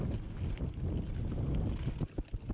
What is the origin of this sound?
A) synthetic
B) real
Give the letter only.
B